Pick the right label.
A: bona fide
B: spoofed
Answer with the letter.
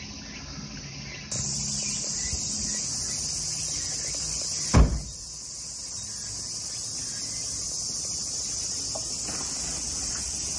A